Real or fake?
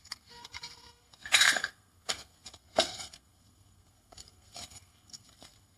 fake